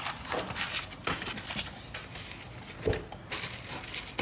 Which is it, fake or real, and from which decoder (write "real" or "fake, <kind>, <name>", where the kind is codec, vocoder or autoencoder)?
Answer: real